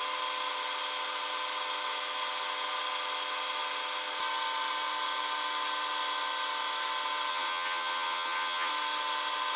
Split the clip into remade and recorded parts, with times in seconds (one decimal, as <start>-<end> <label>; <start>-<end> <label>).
0.0-7.3 recorded; 7.3-8.7 remade; 8.7-9.6 recorded